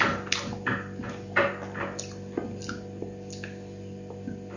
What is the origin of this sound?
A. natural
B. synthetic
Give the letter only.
A